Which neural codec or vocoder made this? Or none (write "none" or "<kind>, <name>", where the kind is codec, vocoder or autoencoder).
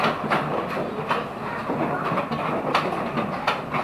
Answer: none